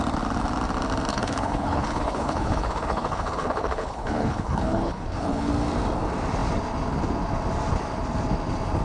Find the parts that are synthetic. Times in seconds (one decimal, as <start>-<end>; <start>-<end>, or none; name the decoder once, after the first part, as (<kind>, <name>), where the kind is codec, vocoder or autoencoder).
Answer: 1.1-5.5 (codec, HILCodec)